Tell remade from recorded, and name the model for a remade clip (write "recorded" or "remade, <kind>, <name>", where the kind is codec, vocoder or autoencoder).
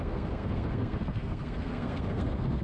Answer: remade, codec, SNAC